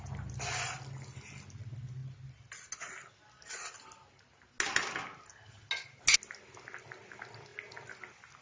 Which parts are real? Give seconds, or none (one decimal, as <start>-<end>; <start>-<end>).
0.0-8.4